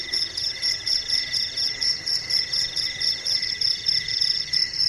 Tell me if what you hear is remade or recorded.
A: remade